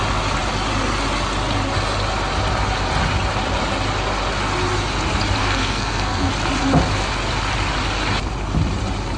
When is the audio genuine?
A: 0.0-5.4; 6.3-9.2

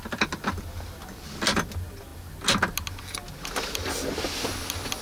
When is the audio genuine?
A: 0.0-5.0

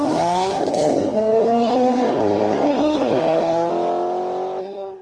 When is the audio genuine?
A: 3.7-4.6

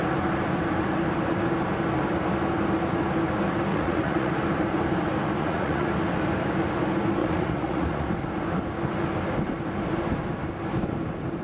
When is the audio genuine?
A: 0.0-3.7; 4.3-5.4; 5.9-7.2; 8.1-11.4

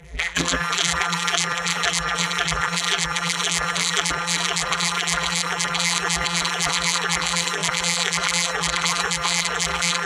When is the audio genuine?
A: none

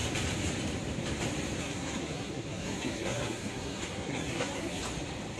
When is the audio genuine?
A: 0.0-1.6; 4.8-5.4